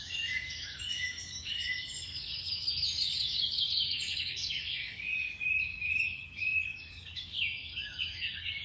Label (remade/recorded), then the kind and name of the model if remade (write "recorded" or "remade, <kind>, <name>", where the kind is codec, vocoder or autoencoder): remade, codec, DAC